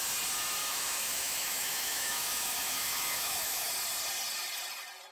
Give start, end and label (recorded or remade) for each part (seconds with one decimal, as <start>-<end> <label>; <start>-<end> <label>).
0.0-0.6 recorded; 0.6-3.7 remade; 3.7-5.1 recorded

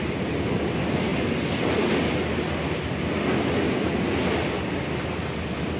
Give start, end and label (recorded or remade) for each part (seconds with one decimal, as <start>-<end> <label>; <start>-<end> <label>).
0.0-5.8 recorded

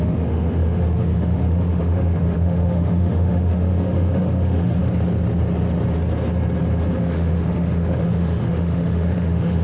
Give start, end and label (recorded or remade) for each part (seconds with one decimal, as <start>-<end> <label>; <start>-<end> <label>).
0.0-4.8 remade; 4.8-6.9 recorded; 6.9-9.6 remade

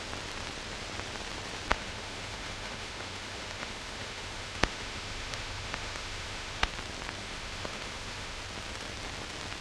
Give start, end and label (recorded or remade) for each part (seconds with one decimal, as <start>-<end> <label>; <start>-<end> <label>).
0.0-1.7 recorded; 1.7-6.7 remade; 6.7-7.2 recorded; 7.2-8.4 remade; 8.4-9.6 recorded

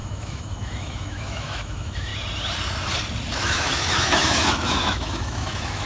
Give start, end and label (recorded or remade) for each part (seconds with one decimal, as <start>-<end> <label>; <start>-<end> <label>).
0.0-2.1 remade; 2.1-3.3 recorded; 3.3-5.9 remade

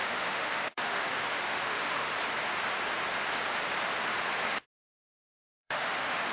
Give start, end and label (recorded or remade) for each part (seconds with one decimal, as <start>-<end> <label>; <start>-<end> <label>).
0.0-2.1 remade; 2.1-5.4 recorded; 5.4-6.3 remade

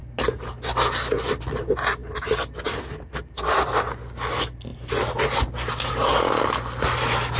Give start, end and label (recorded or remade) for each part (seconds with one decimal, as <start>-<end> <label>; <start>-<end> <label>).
0.0-7.4 recorded

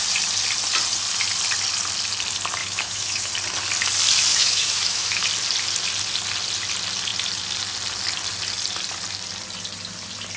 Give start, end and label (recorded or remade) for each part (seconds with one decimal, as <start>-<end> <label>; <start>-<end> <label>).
0.0-2.6 recorded; 2.6-3.3 remade; 3.3-4.3 recorded; 4.3-5.2 remade; 5.2-10.4 recorded